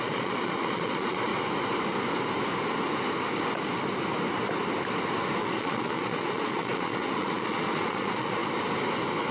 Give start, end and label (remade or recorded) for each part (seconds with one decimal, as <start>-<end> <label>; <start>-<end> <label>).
0.0-1.3 remade; 1.3-5.4 recorded; 5.4-8.4 remade; 8.4-9.3 recorded